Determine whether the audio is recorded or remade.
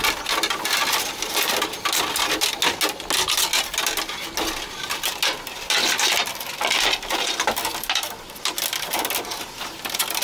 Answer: recorded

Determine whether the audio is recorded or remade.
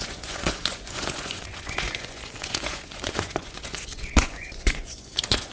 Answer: remade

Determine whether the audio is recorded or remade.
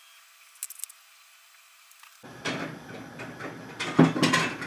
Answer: recorded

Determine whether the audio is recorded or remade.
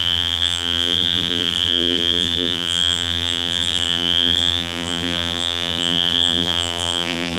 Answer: remade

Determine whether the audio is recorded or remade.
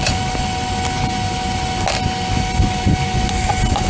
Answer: recorded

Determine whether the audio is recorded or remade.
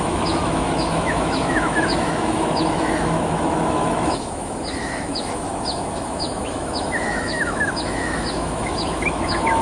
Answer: remade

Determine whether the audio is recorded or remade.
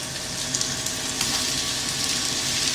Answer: recorded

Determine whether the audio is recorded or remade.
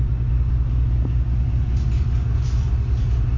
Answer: recorded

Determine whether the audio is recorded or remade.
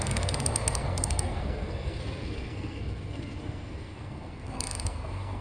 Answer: remade